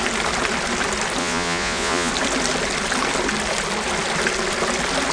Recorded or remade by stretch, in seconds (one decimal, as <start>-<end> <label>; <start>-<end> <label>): 0.0-1.2 recorded; 1.2-2.1 remade; 2.1-5.1 recorded